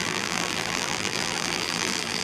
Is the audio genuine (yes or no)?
no